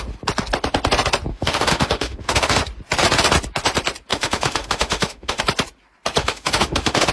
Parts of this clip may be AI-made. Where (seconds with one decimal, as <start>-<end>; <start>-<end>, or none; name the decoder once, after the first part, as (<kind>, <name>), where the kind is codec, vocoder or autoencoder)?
1.3-2.6 (autoencoder, DAC-VAE); 4.1-5.4; 6.2-7.1